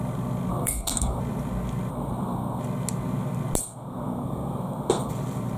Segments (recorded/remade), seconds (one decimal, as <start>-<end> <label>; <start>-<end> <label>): 0.0-0.5 recorded; 0.5-1.2 remade; 1.2-1.9 recorded; 1.9-2.6 remade; 2.6-3.6 recorded; 3.6-5.1 remade; 5.1-5.6 recorded